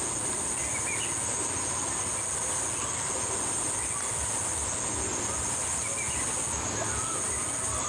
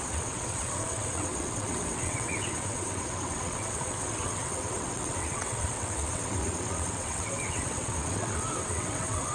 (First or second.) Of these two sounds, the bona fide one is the first